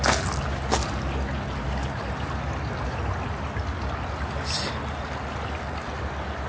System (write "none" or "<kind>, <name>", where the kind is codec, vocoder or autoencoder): none